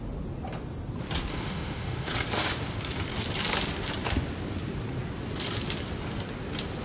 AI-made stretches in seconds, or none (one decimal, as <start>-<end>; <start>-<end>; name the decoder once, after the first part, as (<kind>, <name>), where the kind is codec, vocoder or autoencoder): 1.3-2.1 (autoencoder, DAC-VAE)